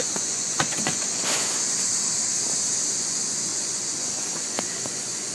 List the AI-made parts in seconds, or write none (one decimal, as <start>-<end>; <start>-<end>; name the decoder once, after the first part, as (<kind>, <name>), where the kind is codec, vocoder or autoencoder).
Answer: 0.0-1.9 (vocoder, Vocos); 2.8-5.3